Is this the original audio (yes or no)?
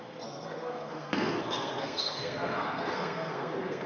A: no